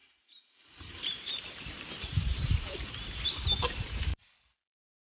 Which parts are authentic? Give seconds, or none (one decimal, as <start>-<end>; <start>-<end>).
4.1-5.1